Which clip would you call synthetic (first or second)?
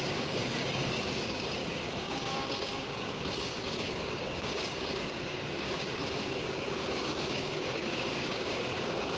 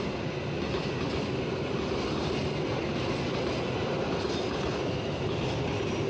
first